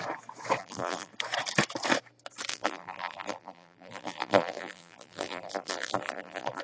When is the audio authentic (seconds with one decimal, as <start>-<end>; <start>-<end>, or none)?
0.0-0.6; 1.1-2.5